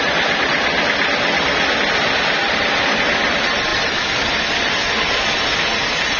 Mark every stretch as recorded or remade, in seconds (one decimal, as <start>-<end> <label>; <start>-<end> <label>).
0.0-3.7 recorded; 3.7-4.4 remade; 4.4-6.2 recorded